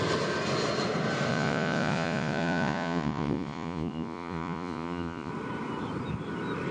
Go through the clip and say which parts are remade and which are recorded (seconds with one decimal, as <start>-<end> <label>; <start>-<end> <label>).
0.0-1.3 recorded; 1.3-5.3 remade; 5.3-6.7 recorded